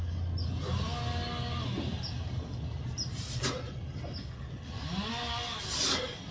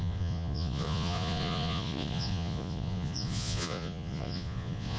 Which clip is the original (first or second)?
first